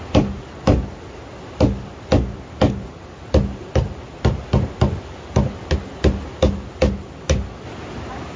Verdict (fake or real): real